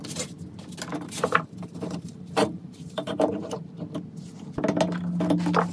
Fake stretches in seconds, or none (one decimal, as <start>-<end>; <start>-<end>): 0.9-3.6